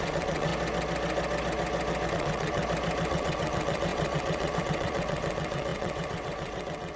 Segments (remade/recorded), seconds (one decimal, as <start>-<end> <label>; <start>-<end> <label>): 0.0-0.5 remade; 0.5-2.1 recorded; 2.1-2.6 remade; 2.6-3.1 recorded; 3.1-7.0 remade